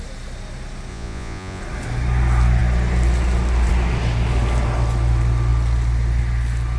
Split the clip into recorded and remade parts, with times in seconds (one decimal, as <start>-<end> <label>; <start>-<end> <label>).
0.0-0.9 recorded; 0.9-1.6 remade; 1.6-6.8 recorded